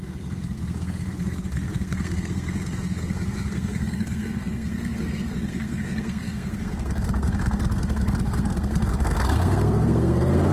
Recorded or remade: remade